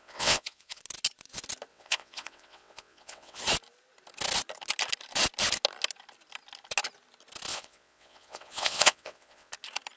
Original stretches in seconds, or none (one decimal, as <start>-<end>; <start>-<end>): 0.8-1.7; 3.4-7.5; 9.5-10.0